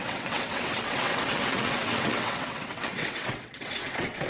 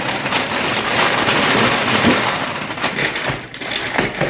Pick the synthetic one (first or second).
first